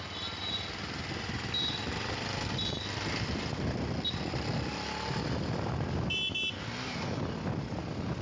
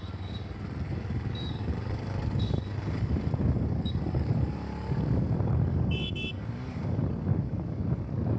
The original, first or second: first